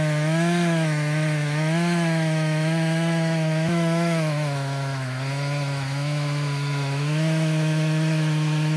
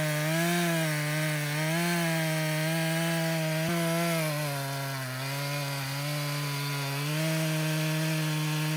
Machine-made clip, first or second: first